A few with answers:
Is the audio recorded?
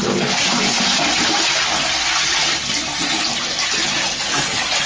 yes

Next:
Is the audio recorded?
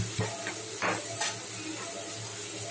yes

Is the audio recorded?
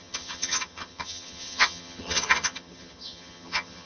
no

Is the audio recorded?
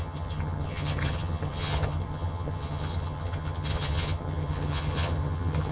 no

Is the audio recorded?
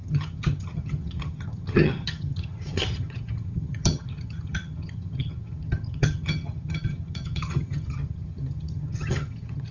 no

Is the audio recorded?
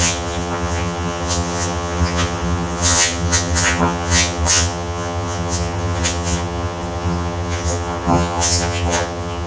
no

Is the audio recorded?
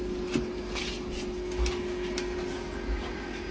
yes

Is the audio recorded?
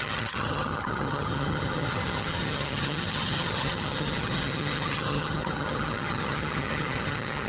no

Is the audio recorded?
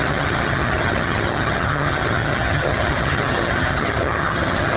no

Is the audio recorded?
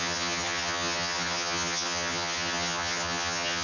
no